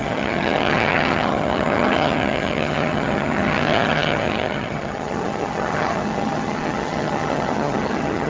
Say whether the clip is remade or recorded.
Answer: remade